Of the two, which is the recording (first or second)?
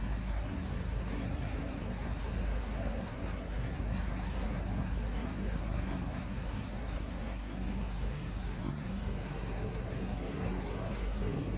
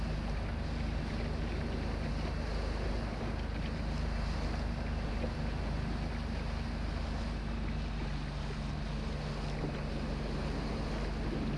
second